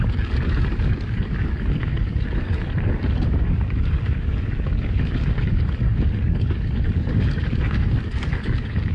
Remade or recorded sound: remade